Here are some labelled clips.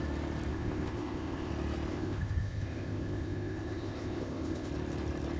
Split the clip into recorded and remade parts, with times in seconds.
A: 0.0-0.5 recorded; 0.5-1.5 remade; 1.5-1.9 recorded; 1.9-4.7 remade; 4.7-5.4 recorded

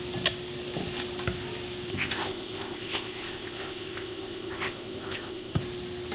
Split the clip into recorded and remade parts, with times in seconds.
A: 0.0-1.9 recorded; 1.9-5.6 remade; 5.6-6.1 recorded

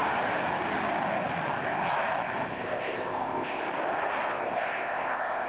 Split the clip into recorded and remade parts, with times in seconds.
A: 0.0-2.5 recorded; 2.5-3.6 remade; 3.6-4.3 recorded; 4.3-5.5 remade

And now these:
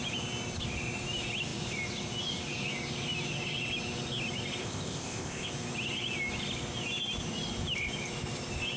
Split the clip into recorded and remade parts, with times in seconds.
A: 0.0-4.6 recorded; 4.6-5.5 remade; 5.5-8.8 recorded

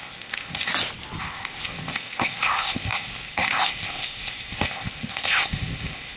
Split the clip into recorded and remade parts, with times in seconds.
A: 0.0-0.7 remade; 0.7-1.2 recorded; 1.2-6.2 remade

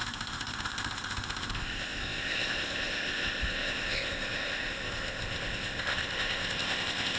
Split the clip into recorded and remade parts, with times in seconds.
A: 0.0-7.2 remade

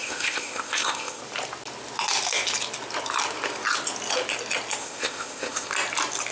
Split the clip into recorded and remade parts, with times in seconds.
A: 0.0-1.2 remade; 1.2-4.8 recorded; 4.8-5.7 remade; 5.7-6.3 recorded

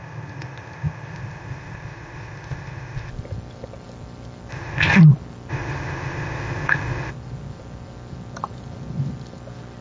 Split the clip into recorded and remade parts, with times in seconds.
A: 0.0-3.1 remade; 3.1-4.5 recorded; 4.5-5.0 remade; 5.0-5.5 recorded; 5.5-7.1 remade; 7.1-9.8 recorded